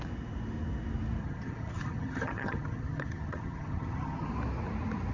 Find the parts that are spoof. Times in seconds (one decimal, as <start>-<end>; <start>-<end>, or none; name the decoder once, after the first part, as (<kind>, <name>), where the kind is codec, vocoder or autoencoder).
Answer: 1.2-4.3 (vocoder, HiFi-GAN)